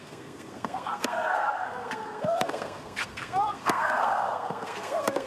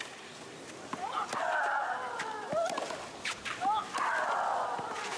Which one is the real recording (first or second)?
second